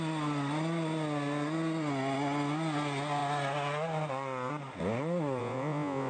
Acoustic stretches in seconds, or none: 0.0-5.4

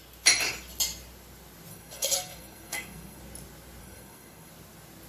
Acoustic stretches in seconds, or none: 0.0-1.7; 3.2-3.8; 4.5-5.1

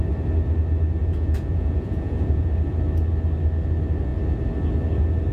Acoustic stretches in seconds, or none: 0.0-1.0; 2.5-5.3